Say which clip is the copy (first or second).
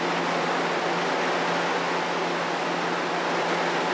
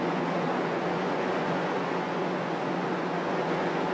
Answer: second